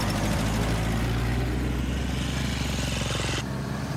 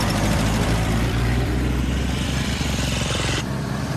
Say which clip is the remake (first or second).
second